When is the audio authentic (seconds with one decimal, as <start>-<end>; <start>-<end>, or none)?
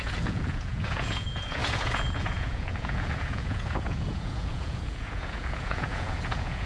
none